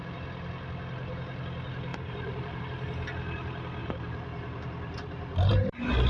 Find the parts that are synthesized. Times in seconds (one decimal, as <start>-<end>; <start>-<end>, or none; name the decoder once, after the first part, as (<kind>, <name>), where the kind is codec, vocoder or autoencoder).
1.9-2.6 (vocoder, BigVGAN v2); 3.8-6.1